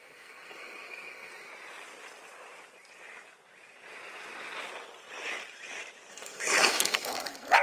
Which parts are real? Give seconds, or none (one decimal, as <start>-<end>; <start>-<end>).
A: 1.5-6.1